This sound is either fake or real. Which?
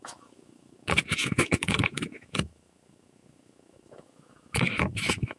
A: fake